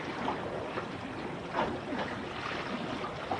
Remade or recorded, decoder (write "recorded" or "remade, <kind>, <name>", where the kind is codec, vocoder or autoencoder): recorded